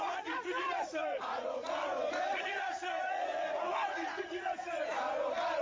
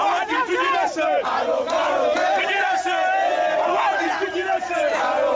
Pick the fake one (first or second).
first